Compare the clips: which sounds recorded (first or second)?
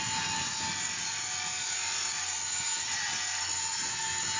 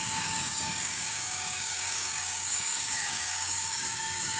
first